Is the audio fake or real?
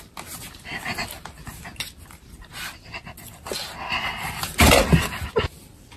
real